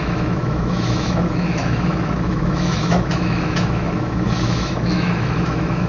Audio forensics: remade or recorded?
remade